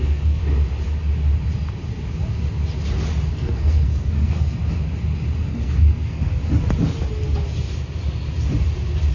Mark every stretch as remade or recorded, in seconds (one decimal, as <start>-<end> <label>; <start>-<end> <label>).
0.0-0.4 remade; 0.4-3.3 recorded; 3.3-4.6 remade; 4.6-5.5 recorded; 5.5-6.3 remade; 6.3-9.1 recorded